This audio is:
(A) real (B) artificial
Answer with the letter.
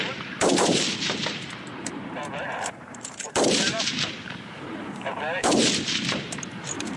B